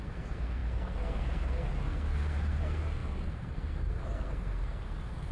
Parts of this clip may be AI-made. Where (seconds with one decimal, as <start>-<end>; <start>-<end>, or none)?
0.0-5.3